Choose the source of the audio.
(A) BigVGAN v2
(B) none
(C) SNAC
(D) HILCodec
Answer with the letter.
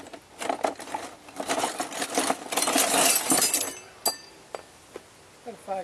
B